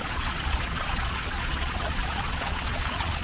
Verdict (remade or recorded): remade